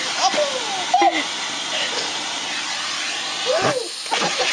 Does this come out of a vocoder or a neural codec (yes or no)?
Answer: no